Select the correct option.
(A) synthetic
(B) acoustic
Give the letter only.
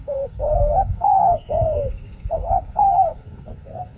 A